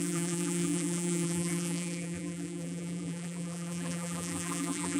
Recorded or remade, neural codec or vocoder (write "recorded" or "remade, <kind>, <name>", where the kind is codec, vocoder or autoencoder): remade, vocoder, BigVGAN v2